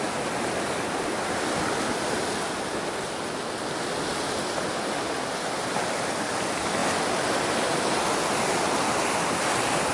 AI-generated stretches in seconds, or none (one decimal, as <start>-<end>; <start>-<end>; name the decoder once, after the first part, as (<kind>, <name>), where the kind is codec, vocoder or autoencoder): none